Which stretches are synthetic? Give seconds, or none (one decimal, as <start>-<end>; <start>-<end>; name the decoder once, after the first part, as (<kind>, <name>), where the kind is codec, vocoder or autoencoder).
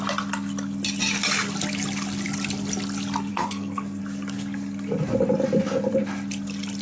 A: 3.3-4.0 (codec, SNAC)